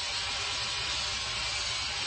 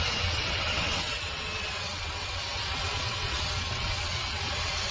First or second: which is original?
first